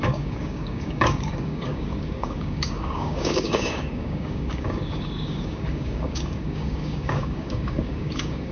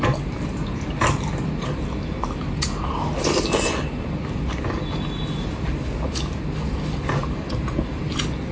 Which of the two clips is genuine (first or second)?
second